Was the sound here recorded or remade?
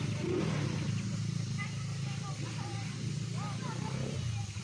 recorded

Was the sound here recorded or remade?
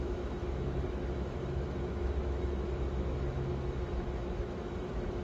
remade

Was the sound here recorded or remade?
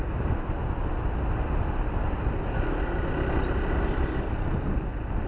recorded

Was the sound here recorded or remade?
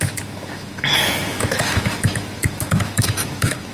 remade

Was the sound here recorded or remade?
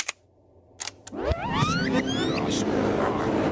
recorded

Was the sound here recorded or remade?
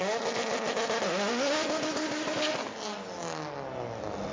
recorded